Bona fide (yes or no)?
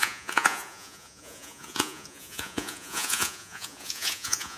no